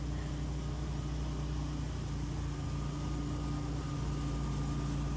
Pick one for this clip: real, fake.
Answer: real